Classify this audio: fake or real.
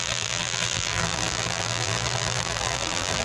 fake